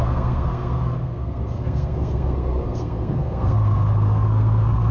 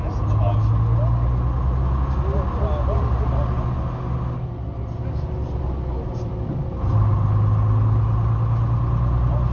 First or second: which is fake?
first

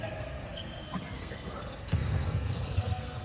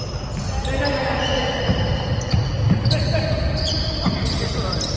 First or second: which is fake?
first